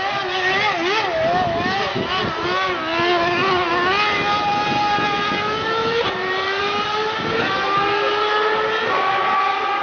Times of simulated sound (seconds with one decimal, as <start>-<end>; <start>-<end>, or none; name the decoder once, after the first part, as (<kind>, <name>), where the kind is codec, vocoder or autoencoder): 5.8-7.2 (vocoder, BigVGAN v2)